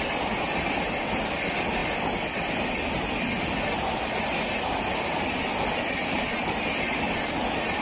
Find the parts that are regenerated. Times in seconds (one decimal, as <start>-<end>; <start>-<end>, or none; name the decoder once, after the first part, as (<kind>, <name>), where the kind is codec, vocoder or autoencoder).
none